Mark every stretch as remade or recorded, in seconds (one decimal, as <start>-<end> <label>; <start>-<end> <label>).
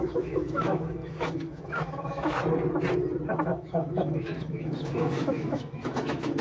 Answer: 0.0-2.4 remade; 2.4-3.3 recorded; 3.3-6.4 remade